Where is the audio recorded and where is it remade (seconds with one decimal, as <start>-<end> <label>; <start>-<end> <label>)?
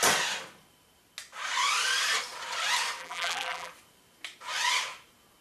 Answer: 0.0-3.0 recorded; 3.0-3.7 remade; 3.7-5.4 recorded